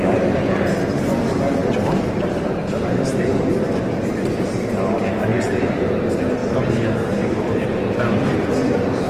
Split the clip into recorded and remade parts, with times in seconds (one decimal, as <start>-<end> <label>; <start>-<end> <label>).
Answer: 0.0-1.6 recorded; 1.6-2.5 remade; 2.5-6.4 recorded; 6.4-8.0 remade; 8.0-9.1 recorded